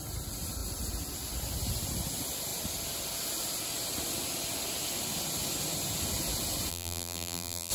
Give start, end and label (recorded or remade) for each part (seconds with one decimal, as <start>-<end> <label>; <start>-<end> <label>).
0.0-6.7 recorded; 6.7-7.7 remade